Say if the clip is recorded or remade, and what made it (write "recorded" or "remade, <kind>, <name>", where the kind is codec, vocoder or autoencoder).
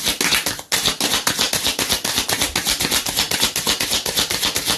recorded